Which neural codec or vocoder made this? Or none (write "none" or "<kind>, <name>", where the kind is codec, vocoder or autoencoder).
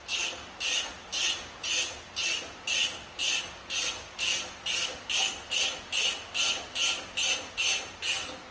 none